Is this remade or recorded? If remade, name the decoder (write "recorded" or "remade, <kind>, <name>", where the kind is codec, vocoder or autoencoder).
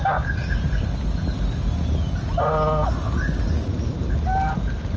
recorded